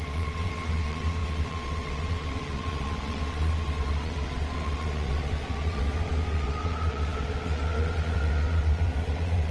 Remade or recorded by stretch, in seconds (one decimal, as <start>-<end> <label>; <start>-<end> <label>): 0.0-9.5 remade